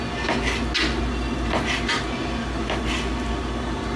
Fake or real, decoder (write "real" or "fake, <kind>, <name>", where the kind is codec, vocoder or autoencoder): real